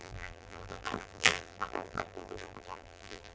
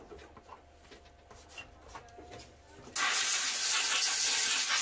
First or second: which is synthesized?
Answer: first